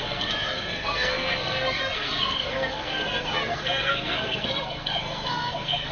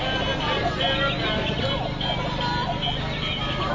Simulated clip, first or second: first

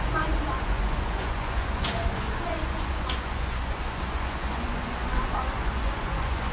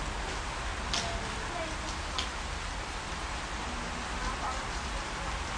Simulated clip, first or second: first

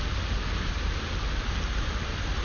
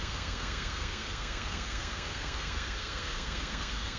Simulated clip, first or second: second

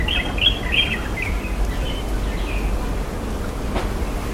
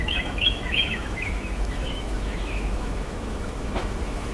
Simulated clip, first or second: second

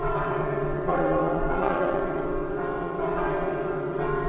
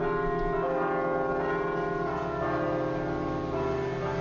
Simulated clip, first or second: first